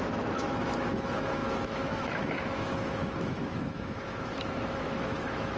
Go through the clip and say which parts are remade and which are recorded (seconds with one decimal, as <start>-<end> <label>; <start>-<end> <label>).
0.0-5.6 remade